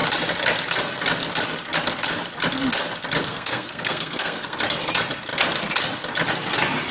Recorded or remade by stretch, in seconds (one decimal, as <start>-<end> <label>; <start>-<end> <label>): 0.0-3.2 recorded; 3.2-4.6 remade; 4.6-6.9 recorded